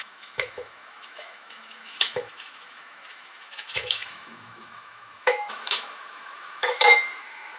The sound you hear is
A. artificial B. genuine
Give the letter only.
A